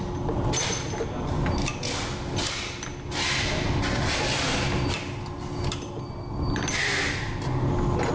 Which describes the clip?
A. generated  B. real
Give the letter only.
B